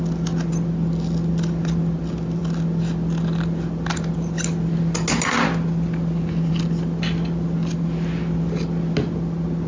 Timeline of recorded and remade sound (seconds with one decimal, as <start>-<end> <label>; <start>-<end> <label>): 0.0-9.7 recorded